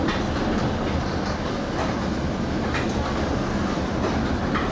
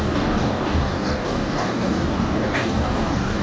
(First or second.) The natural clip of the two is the first